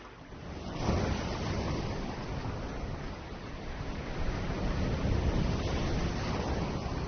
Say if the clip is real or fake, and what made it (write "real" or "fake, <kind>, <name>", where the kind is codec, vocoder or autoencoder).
real